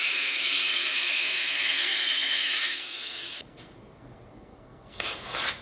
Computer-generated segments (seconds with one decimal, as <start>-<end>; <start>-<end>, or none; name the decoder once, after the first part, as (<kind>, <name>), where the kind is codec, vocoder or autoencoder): 0.0-5.6 (codec, SNAC)